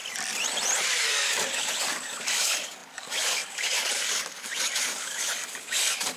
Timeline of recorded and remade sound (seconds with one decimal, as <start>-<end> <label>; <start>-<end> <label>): 0.0-0.9 recorded; 0.9-6.2 remade